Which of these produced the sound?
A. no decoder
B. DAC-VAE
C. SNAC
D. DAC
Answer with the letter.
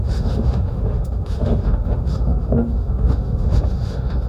B